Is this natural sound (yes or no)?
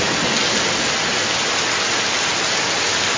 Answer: yes